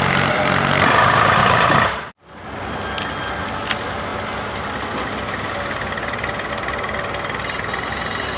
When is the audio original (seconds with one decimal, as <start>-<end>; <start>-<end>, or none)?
0.0-8.4